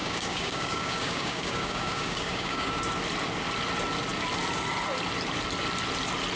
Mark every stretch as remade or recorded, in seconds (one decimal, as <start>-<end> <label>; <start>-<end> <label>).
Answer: 0.0-2.8 remade; 2.8-6.4 recorded